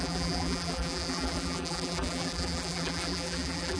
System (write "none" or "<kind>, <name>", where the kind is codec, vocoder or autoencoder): vocoder, BigVGAN v2